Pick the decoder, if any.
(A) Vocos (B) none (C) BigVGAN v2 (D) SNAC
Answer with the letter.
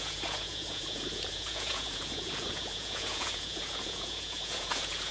A